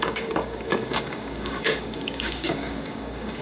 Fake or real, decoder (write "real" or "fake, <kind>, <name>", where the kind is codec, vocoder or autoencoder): fake, codec, DAC